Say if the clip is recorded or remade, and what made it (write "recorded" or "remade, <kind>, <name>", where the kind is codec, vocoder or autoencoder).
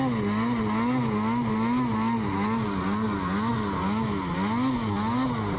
recorded